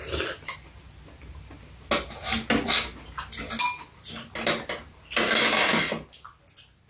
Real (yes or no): yes